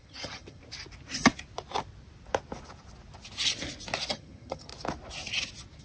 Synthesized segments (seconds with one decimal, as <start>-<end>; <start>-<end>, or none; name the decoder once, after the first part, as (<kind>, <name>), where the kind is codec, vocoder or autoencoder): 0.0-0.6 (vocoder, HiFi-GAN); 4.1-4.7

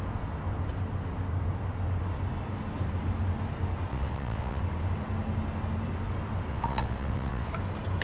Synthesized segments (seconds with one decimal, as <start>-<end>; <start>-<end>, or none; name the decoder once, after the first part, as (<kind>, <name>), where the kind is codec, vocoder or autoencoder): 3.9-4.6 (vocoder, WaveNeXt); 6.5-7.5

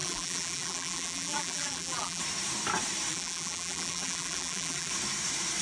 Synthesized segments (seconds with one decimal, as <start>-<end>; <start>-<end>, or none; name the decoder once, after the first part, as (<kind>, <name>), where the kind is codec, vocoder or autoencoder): 0.0-2.2 (vocoder, BigVGAN v2); 3.1-4.9

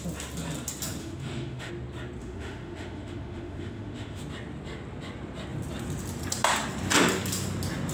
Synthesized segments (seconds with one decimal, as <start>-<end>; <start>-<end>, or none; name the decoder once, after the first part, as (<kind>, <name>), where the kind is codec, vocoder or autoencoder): 1.0-1.7 (autoencoder, DAC-VAE); 2.2-4.2

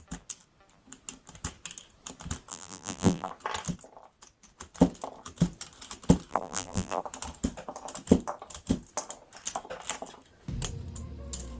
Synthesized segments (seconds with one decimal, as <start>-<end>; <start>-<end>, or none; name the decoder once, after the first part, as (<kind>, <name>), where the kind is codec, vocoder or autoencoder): 2.5-3.3 (vocoder, BigVGAN v2); 6.3-7.0

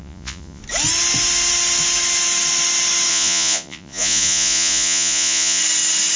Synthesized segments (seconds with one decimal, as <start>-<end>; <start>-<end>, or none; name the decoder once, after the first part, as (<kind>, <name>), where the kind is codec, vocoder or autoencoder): 0.0-0.6 (vocoder, Vocos); 3.1-5.6

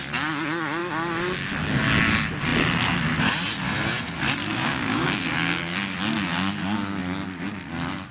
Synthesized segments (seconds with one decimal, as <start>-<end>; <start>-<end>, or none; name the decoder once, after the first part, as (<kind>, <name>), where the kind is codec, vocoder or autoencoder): 4.5-5.2 (codec, DAC)

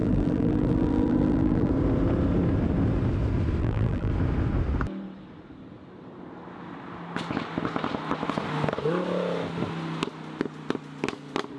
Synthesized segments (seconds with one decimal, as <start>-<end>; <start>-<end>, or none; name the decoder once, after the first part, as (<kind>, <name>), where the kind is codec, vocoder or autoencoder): 0.0-1.7 (vocoder, BigVGAN v2); 3.6-4.1